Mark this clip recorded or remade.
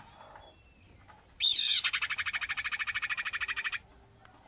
recorded